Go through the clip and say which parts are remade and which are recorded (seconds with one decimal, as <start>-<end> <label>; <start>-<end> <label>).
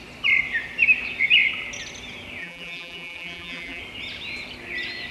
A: 0.0-2.4 recorded; 2.4-3.8 remade; 3.8-5.1 recorded